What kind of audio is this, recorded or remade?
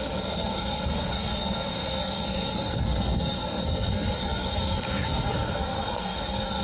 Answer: remade